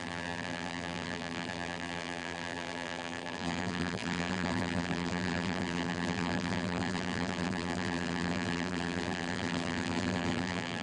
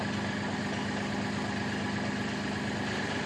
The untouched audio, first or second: second